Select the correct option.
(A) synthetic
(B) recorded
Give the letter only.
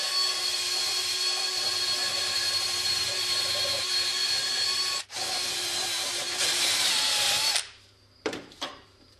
A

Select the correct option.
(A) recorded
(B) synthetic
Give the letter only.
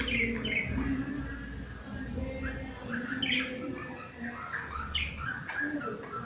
A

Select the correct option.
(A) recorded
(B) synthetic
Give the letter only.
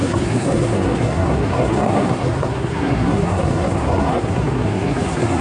B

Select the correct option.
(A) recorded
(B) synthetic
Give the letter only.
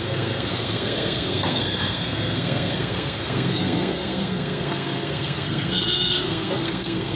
B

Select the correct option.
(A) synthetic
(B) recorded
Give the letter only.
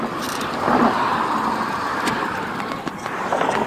B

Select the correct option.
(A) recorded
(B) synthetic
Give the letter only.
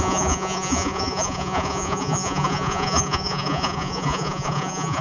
B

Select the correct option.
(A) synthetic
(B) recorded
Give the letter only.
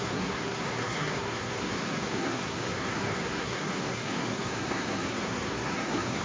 A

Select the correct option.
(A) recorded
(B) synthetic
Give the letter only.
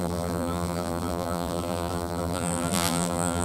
B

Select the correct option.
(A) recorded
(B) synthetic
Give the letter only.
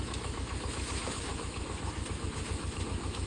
B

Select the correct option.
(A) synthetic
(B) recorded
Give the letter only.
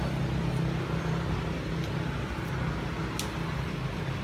B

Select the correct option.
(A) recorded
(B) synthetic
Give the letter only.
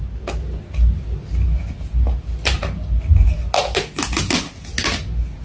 A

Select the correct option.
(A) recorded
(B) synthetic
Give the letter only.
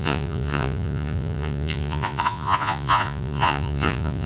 B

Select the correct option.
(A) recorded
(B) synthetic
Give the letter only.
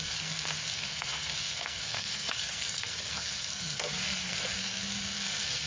B